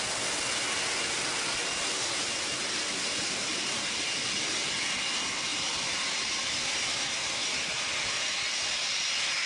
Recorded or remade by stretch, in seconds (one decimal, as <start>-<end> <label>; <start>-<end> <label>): 0.0-9.5 recorded